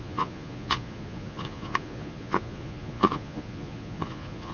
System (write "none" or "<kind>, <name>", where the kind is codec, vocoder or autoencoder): vocoder, Vocos